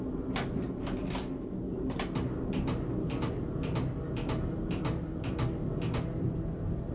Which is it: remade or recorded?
recorded